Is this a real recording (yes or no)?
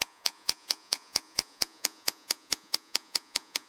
no